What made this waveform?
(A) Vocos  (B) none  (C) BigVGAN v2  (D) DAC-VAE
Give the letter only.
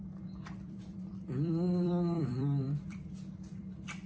C